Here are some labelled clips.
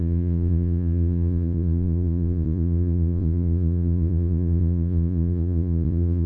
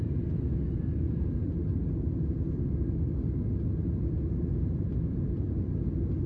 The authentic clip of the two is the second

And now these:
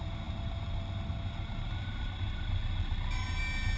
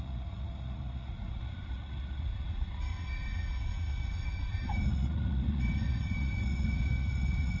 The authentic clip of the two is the first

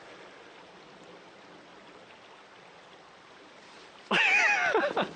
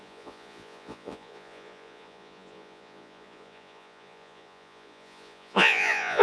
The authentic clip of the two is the first